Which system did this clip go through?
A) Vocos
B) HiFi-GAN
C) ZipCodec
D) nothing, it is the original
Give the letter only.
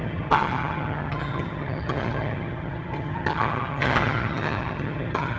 B